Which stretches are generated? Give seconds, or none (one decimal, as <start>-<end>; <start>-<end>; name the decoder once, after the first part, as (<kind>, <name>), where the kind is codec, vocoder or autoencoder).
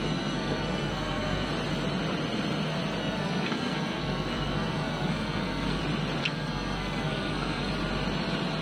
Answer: 0.0-1.5 (codec, SNAC); 3.0-5.8; 6.2-7.7